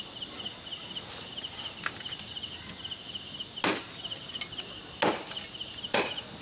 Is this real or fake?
real